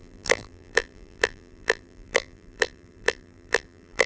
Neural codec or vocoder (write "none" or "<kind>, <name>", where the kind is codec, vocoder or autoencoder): vocoder, BigVGAN v2